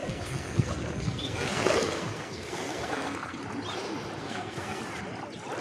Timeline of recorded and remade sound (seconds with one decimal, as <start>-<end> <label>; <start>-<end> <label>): 0.0-3.4 remade; 3.4-4.2 recorded; 4.2-4.8 remade; 4.8-5.6 recorded